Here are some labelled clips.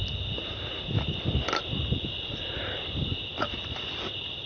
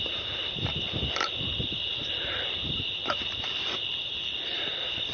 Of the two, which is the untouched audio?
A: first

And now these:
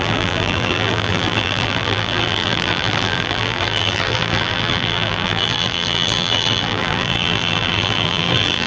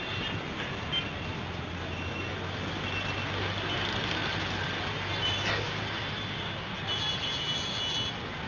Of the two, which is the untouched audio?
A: second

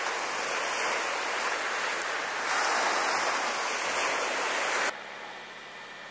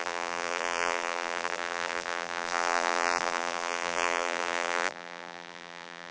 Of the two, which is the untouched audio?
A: first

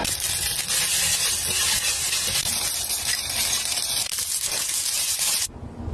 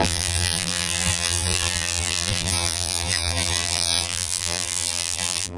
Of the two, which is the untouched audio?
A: first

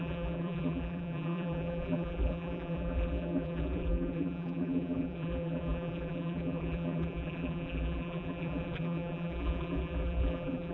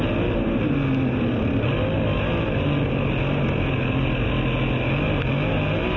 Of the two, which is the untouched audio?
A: second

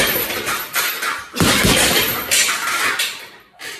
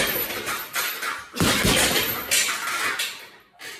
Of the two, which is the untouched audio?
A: second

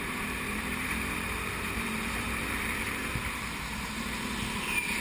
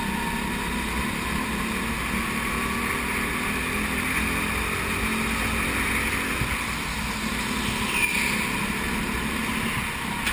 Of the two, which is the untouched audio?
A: second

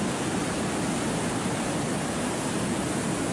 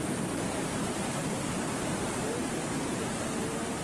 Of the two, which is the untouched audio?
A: first